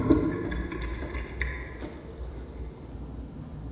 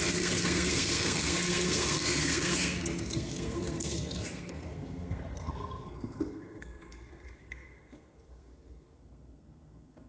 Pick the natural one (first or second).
first